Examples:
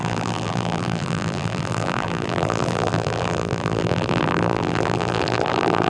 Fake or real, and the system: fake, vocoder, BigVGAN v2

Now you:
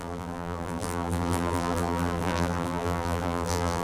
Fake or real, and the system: fake, vocoder, BigVGAN v2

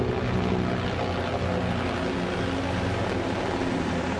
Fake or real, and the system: real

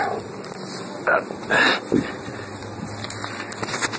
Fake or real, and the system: fake, vocoder, BigVGAN v2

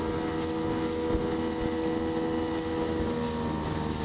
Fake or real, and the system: real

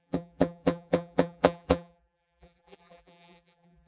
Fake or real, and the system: fake, vocoder, BigVGAN v2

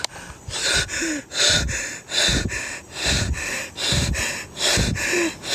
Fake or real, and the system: real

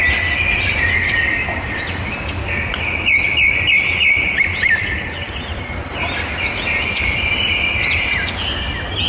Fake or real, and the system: real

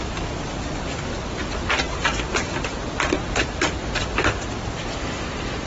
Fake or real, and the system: real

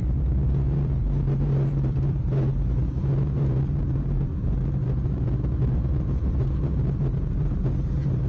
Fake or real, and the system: fake, vocoder, BigVGAN v2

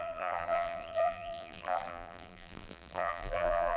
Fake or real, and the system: fake, vocoder, BigVGAN v2